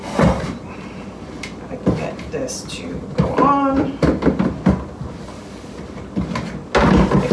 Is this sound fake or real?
real